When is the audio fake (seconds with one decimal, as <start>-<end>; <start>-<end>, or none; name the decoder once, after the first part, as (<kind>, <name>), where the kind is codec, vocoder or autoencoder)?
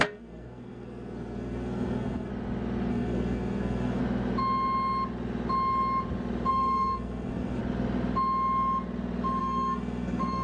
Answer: 0.0-2.3 (codec, SNAC); 2.9-4.0; 6.5-7.6; 9.4-10.4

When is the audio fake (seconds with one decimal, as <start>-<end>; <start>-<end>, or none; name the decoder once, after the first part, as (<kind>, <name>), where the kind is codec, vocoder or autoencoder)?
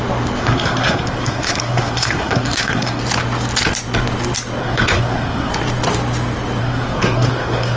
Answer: 0.4-3.0 (codec, SNAC); 4.6-5.5; 6.6-7.8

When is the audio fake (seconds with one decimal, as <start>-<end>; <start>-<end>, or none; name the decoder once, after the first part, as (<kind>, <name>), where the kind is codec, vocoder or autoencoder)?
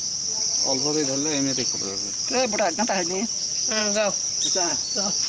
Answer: 4.7-5.3 (vocoder, Vocos)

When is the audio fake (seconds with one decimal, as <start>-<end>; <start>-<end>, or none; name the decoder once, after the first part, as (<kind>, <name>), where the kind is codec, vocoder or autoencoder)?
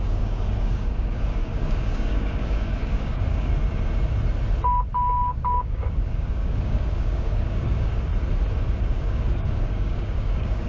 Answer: 0.0-3.5 (codec, DAC); 5.1-8.1; 8.8-10.7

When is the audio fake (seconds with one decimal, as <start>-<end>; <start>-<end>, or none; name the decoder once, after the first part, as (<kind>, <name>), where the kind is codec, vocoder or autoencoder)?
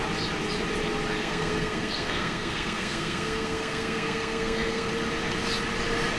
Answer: 1.2-4.9 (codec, SNAC)